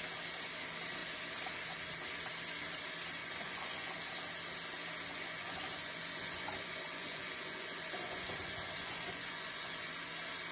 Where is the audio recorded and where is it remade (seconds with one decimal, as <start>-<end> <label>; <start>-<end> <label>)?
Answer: 0.0-3.2 recorded; 3.2-4.0 remade; 4.0-5.1 recorded; 5.1-9.9 remade; 9.9-10.5 recorded